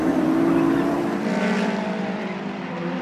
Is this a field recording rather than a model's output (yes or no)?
no